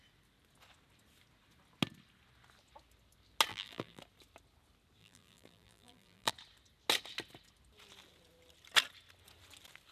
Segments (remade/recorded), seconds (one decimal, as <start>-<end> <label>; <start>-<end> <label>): 0.0-3.5 recorded; 3.5-4.0 remade; 4.0-5.0 recorded; 5.0-6.3 remade; 6.3-9.9 recorded